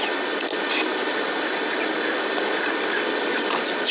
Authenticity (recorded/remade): recorded